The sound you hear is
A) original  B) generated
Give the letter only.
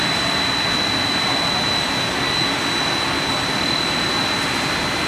A